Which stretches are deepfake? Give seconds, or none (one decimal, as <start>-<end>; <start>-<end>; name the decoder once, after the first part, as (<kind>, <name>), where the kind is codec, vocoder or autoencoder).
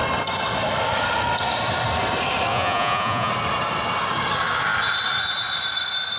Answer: 2.5-3.3 (vocoder, Vocos)